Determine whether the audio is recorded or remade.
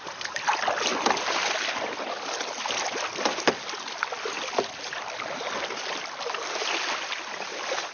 recorded